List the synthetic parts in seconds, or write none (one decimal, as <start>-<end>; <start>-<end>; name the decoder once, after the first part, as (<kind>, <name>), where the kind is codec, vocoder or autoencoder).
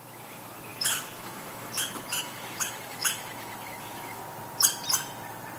0.0-4.2 (autoencoder, DAC-VAE)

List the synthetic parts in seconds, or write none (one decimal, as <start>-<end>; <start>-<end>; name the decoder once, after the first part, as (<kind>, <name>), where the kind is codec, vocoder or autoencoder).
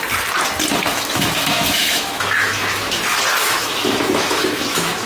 0.9-3.0 (autoencoder, DAC-VAE); 3.4-5.1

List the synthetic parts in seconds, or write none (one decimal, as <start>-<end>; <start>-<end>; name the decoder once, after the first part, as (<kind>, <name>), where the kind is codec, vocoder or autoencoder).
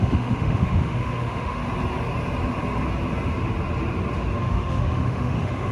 0.0-1.6 (autoencoder, DAC-VAE); 4.4-5.7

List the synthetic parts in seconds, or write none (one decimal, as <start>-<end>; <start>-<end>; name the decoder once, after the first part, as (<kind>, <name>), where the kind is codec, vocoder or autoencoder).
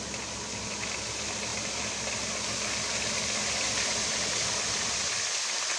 none